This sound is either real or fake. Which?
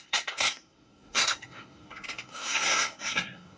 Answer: fake